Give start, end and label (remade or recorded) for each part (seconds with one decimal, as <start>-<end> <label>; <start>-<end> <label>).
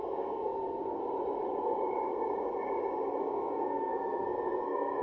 0.0-1.0 remade; 1.0-3.2 recorded; 3.2-5.0 remade